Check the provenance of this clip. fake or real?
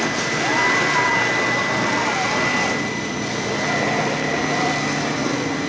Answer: real